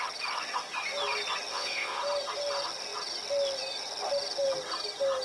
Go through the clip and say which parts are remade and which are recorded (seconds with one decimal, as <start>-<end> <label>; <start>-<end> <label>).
0.0-1.5 recorded; 1.5-2.0 remade; 2.0-5.2 recorded